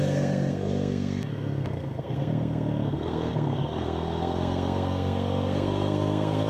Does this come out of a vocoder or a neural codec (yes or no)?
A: yes